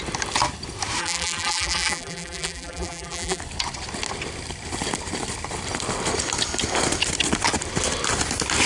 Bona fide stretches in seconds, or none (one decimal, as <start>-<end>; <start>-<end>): 0.0-1.0; 3.4-8.7